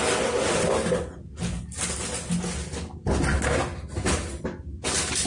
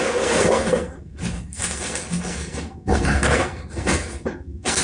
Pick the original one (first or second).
first